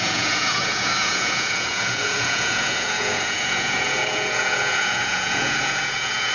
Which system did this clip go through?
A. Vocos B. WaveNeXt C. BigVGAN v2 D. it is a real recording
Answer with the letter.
A